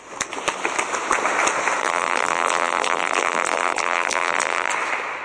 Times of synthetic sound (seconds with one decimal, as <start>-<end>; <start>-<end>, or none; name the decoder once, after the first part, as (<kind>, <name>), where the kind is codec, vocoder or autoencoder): 1.8-4.7 (vocoder, BigVGAN v2)

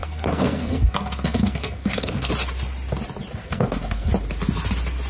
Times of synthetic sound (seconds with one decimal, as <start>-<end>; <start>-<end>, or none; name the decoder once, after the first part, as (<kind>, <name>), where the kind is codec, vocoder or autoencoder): 0.0-2.3 (codec, SNAC); 3.4-4.1

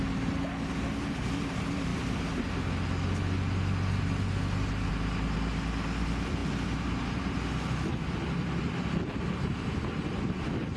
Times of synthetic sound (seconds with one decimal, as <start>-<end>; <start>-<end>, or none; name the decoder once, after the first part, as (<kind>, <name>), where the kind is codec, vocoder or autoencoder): none

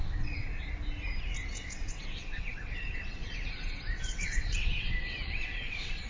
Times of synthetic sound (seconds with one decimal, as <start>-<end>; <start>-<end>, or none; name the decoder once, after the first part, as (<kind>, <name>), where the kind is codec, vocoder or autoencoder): 0.0-0.5 (vocoder, WaveNeXt); 1.4-6.1

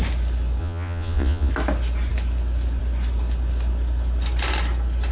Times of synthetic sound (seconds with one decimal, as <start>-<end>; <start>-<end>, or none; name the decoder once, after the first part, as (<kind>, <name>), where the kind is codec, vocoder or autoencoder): 0.6-1.5 (vocoder, Vocos)

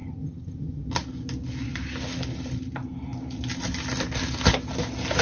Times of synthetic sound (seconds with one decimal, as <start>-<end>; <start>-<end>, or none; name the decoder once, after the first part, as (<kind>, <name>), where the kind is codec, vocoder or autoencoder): 0.0-0.9 (vocoder, HiFi-GAN)